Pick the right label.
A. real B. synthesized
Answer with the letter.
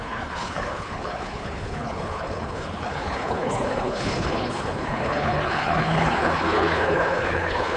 B